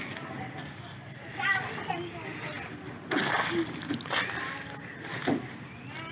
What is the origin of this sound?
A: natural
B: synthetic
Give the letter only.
A